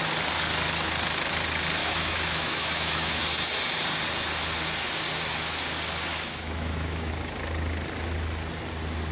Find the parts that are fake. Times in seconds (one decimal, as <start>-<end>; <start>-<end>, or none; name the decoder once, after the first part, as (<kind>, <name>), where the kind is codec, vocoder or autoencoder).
1.8-3.2 (autoencoder, DAC-VAE); 6.1-7.1